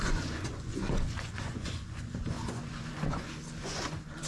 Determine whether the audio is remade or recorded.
remade